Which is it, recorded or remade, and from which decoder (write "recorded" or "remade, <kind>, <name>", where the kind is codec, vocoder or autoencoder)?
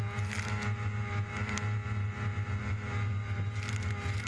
recorded